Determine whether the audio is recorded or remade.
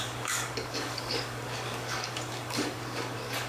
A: remade